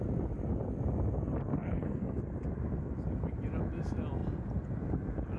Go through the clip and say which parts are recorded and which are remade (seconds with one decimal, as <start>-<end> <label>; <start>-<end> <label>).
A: 0.0-1.5 recorded; 1.5-2.2 remade; 2.2-5.4 recorded